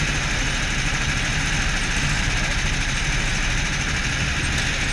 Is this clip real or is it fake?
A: real